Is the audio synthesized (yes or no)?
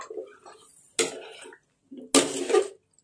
no